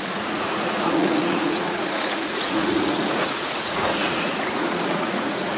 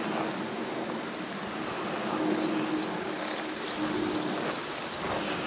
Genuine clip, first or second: second